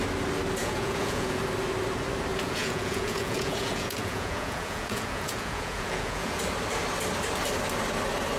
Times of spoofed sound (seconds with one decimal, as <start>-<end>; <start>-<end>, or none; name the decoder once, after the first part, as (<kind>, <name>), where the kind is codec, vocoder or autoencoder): 0.6-1.4 (vocoder, Vocos); 2.3-6.4